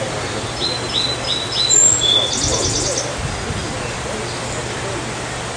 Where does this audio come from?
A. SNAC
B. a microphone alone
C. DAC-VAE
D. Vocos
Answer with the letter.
B